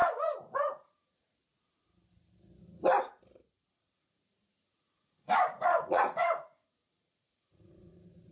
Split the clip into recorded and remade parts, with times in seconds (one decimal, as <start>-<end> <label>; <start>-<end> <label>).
0.0-1.4 remade; 1.4-3.8 recorded; 3.8-8.3 remade